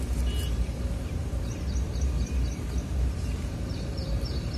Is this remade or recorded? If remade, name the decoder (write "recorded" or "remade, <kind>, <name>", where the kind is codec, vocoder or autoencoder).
remade, vocoder, BigVGAN v2